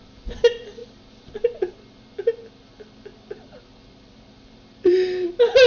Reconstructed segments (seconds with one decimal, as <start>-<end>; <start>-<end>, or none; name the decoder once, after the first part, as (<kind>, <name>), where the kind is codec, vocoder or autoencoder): none